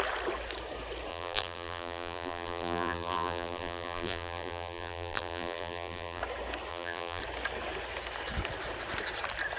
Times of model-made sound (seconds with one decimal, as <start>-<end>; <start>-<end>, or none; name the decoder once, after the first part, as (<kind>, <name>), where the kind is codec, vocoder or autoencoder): 1.1-6.2 (vocoder, BigVGAN v2); 6.7-7.2